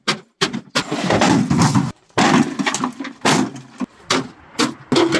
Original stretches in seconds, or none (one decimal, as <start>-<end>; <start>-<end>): 0.0-5.2